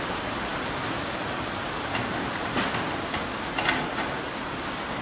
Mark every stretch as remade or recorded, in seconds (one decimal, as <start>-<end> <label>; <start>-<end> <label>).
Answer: 0.0-5.0 recorded